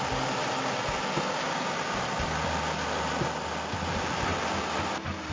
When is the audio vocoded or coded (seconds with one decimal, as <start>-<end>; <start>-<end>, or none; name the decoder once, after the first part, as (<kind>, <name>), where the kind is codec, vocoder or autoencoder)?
none